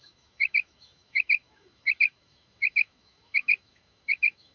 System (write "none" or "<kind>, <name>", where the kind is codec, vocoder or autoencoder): autoencoder, DAC-VAE